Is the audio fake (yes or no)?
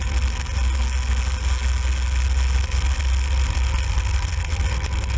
no